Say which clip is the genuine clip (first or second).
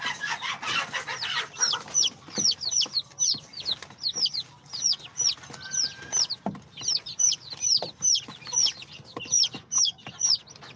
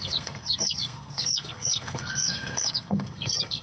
first